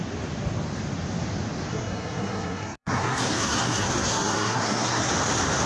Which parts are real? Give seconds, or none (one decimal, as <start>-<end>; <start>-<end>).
0.0-1.7; 5.1-5.7